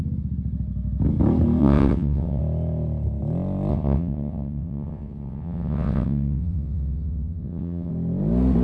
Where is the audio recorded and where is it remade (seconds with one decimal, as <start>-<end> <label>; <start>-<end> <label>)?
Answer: 0.0-1.6 recorded; 1.6-2.4 remade; 2.4-3.7 recorded; 3.7-7.9 remade; 7.9-8.6 recorded